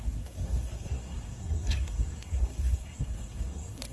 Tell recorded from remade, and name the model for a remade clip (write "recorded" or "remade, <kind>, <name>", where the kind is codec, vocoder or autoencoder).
remade, codec, SNAC